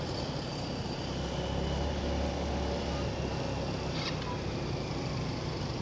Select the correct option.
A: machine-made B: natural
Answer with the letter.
B